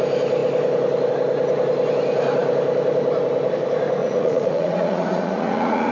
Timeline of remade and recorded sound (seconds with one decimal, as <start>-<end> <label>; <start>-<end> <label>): 0.0-4.0 recorded; 4.0-5.9 remade